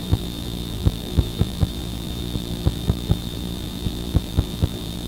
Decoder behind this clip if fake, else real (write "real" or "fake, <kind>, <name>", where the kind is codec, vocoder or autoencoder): fake, vocoder, BigVGAN v2